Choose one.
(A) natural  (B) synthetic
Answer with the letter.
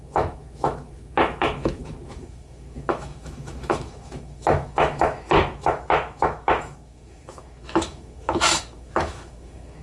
B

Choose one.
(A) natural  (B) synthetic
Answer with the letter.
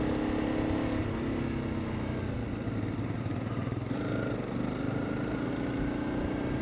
A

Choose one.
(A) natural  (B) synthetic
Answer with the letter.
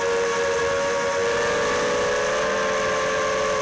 A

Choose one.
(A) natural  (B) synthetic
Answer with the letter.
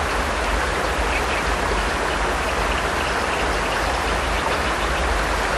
A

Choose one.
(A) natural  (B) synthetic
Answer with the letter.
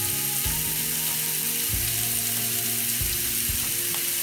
A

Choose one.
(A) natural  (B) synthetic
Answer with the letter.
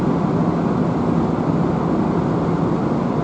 A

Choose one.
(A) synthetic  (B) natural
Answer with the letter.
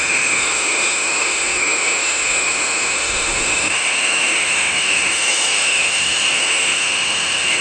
A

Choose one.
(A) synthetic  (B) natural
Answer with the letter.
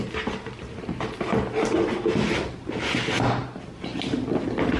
B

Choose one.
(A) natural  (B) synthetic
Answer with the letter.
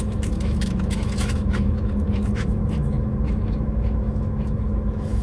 B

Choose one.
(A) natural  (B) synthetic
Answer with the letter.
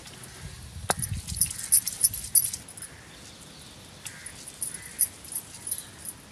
A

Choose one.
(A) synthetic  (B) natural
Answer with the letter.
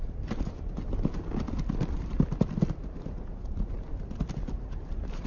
B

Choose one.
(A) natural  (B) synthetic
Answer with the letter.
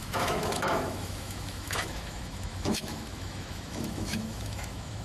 B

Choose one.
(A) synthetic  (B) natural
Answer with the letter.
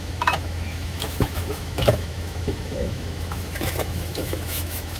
A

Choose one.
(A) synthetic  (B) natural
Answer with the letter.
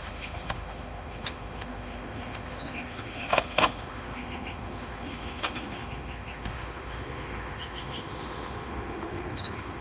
A